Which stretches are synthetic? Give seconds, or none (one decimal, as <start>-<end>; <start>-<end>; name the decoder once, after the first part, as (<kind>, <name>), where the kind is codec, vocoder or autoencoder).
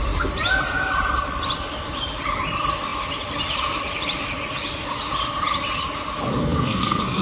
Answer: 6.4-7.2 (codec, SNAC)